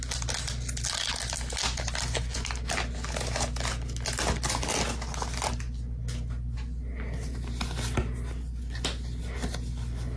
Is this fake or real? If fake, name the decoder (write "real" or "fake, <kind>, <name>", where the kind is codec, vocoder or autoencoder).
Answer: real